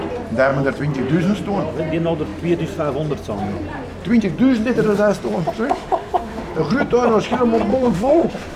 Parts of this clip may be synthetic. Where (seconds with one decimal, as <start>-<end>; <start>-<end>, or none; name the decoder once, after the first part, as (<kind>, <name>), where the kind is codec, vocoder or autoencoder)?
5.6-6.5 (autoencoder, DAC-VAE); 7.7-8.6